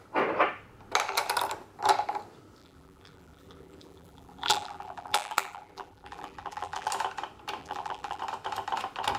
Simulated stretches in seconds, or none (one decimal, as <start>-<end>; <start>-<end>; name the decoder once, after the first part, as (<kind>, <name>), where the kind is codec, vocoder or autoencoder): 2.6-6.9 (vocoder, BigVGAN v2); 7.6-8.2